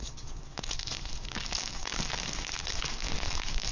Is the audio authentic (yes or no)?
no